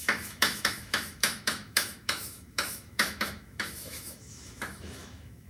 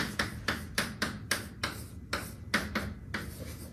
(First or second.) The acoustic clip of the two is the second